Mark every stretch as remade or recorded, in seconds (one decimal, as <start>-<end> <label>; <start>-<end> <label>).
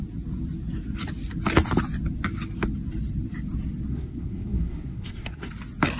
0.0-3.9 recorded; 3.9-5.5 remade; 5.5-6.0 recorded